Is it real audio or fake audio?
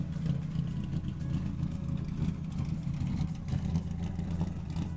real